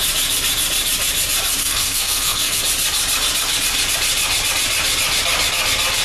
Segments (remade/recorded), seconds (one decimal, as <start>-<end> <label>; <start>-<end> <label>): 0.0-1.6 recorded; 1.6-2.6 remade; 2.6-6.0 recorded